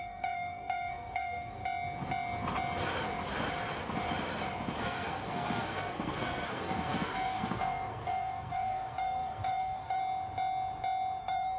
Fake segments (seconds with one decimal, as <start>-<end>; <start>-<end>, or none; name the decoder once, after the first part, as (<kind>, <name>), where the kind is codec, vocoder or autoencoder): 0.0-1.6 (codec, SNAC); 4.8-10.0; 11.2-11.6